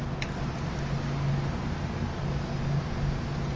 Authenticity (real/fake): real